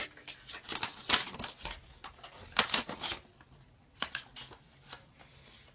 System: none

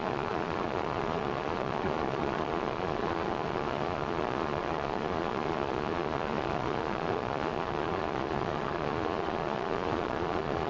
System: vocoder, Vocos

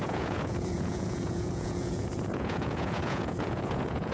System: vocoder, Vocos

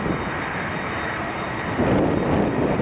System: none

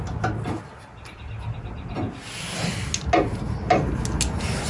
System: none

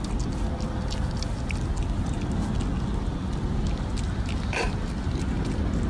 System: none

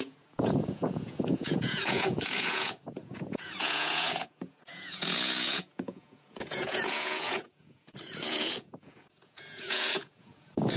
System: vocoder, Vocos